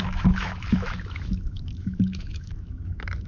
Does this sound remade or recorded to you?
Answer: remade